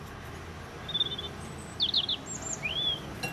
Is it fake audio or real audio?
real